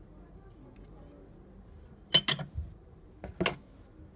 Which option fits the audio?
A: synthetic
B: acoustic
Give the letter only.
B